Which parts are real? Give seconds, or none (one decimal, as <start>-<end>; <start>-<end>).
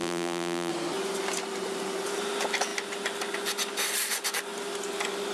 0.7-5.3